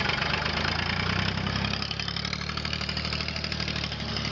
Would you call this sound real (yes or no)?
no